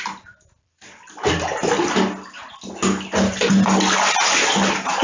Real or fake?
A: real